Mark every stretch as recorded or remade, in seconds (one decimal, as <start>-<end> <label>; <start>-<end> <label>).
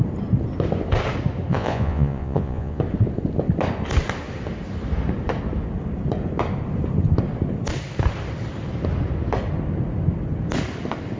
0.0-1.5 recorded; 1.5-2.8 remade; 2.8-11.2 recorded